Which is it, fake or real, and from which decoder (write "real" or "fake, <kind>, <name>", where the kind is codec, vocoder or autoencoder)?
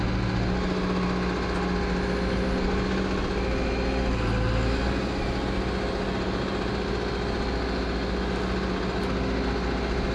real